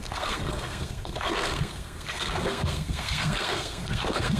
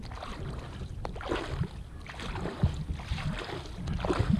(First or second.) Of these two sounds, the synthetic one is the first